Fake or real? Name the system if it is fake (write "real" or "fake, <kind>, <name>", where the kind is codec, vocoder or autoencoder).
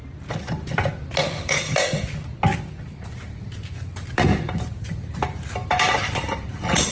real